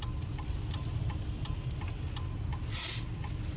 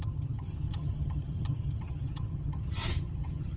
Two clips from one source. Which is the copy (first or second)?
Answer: second